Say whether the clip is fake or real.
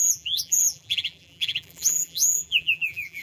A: fake